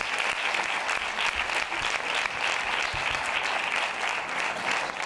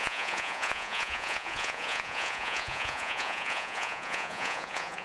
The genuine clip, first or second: first